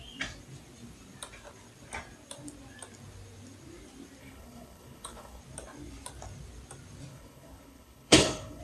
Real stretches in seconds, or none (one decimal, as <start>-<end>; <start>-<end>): 0.0-4.2; 5.4-7.1